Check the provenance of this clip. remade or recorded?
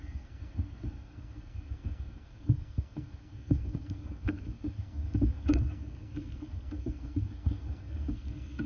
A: remade